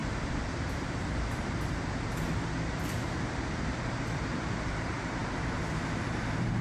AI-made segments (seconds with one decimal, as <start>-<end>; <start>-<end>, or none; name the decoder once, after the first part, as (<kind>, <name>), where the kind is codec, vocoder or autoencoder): 0.0-6.6 (vocoder, BigVGAN v2)